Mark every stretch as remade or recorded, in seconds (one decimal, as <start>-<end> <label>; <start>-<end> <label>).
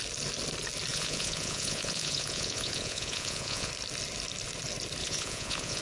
0.0-0.9 recorded; 0.9-3.7 remade; 3.7-5.0 recorded; 5.0-5.8 remade